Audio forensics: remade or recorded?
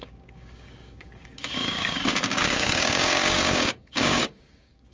remade